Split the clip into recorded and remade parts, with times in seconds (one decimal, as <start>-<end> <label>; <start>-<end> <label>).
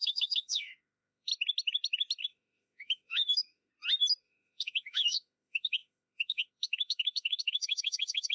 0.0-1.3 remade; 1.3-2.2 recorded; 2.2-3.7 remade; 3.7-4.2 recorded; 4.2-8.3 remade